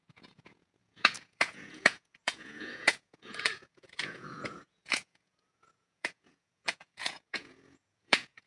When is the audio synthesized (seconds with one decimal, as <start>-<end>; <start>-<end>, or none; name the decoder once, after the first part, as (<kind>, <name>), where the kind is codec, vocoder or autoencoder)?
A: 0.0-8.5 (vocoder, Vocos)